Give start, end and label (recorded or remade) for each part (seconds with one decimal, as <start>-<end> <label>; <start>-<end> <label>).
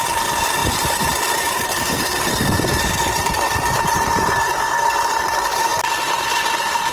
0.0-5.7 remade; 5.7-6.2 recorded; 6.2-6.9 remade